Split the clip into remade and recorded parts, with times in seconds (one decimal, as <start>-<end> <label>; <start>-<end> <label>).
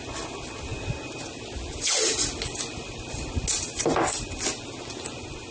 0.0-5.5 recorded